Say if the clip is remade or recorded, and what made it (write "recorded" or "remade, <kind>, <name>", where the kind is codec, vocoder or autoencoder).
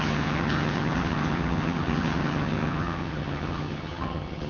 remade, vocoder, HiFi-GAN